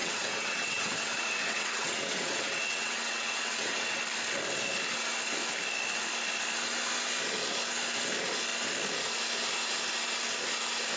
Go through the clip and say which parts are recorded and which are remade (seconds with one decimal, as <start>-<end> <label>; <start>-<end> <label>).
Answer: 0.0-4.0 remade; 4.0-11.0 recorded